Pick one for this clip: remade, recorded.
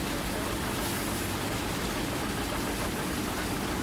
recorded